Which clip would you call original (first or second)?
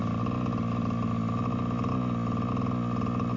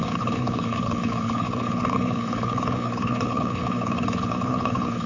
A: first